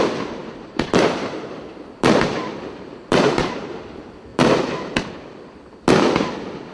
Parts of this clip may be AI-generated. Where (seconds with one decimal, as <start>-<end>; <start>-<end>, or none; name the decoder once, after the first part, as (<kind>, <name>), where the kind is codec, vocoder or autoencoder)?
0.4-3.7 (vocoder, BigVGAN v2); 4.3-5.6